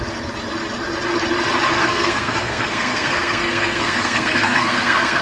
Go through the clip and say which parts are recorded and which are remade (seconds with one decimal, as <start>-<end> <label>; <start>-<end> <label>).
0.0-1.8 recorded; 1.8-5.2 remade